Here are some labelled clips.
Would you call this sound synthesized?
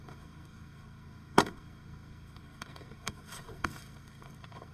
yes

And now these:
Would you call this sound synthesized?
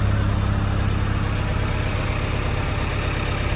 no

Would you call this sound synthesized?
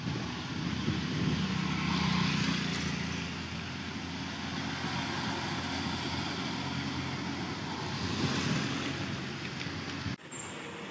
no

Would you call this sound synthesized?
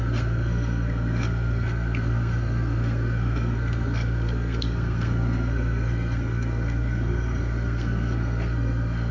yes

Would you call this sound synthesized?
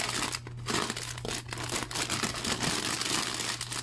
no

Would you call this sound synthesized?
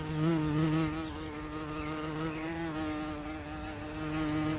no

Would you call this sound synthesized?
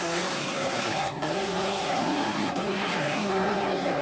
yes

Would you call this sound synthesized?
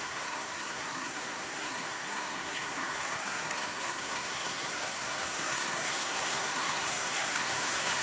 yes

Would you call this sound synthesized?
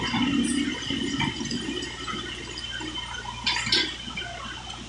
no